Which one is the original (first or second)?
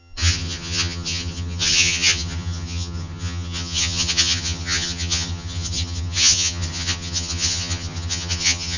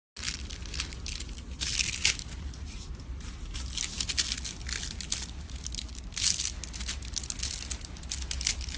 second